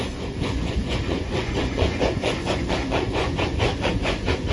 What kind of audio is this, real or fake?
fake